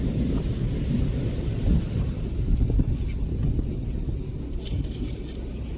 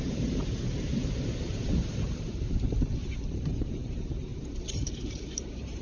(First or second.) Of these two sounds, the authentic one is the first